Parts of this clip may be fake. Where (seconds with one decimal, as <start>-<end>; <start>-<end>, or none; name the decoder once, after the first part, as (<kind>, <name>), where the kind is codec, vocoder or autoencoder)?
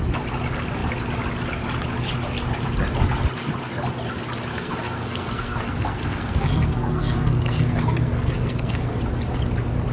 4.5-9.0 (codec, SNAC)